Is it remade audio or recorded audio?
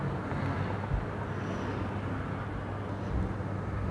remade